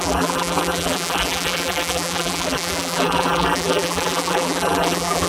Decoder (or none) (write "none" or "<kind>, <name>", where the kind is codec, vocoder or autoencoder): vocoder, BigVGAN v2